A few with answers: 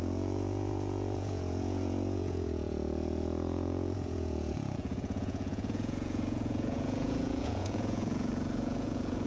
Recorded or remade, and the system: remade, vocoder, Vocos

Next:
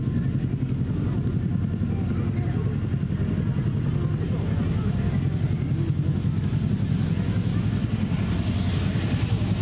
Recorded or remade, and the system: recorded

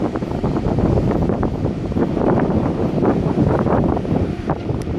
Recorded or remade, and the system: remade, vocoder, BigVGAN v2